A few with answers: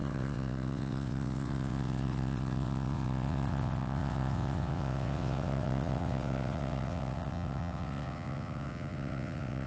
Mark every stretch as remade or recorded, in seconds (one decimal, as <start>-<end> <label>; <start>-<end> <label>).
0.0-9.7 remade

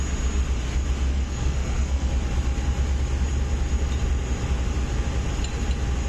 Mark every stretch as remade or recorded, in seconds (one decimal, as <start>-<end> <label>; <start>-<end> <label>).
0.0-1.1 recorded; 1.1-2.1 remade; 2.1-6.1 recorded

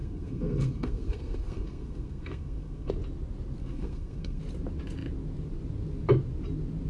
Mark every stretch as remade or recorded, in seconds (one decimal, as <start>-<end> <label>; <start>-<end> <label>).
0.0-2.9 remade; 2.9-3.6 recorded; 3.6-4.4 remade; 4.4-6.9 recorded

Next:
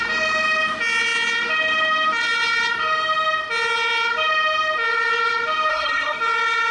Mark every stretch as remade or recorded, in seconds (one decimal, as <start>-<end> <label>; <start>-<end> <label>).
0.0-5.7 recorded; 5.7-6.2 remade; 6.2-6.7 recorded